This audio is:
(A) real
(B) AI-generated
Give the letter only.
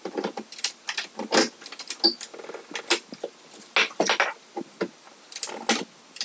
A